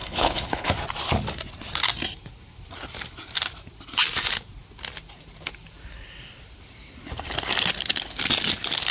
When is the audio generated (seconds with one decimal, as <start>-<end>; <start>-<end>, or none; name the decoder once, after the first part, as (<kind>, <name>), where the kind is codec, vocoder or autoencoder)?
0.0-0.7 (codec, HILCodec)